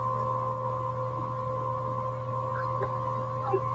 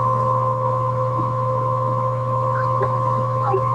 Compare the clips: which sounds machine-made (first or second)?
second